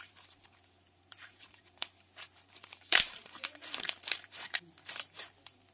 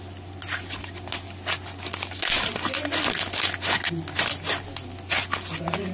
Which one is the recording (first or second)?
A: second